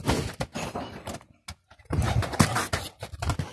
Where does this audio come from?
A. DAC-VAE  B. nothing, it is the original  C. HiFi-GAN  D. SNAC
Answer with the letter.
B